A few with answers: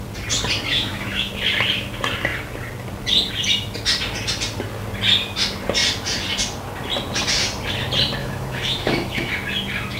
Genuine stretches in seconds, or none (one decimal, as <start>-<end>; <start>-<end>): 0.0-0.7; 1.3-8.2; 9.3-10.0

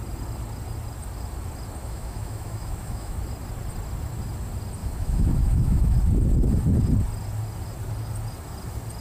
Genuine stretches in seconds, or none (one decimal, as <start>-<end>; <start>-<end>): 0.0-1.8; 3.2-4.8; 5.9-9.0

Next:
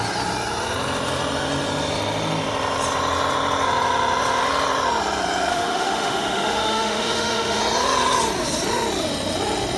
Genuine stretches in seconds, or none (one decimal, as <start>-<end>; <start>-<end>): 0.0-5.5; 7.6-9.8

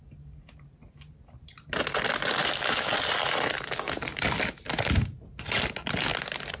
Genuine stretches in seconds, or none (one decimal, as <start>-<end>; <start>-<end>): 0.0-2.4; 2.9-6.6

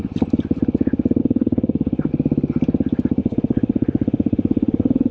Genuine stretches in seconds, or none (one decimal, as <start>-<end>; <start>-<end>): 0.0-1.2; 2.1-3.2